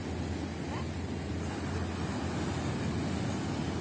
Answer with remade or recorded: recorded